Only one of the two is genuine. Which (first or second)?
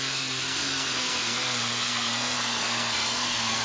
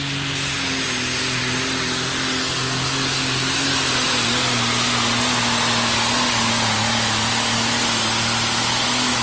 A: second